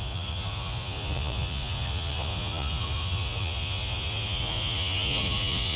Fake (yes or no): yes